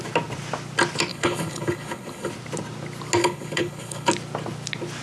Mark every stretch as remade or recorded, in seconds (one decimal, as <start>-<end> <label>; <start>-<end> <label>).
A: 0.0-1.1 recorded; 1.1-2.3 remade; 2.3-3.2 recorded; 3.2-4.1 remade; 4.1-5.0 recorded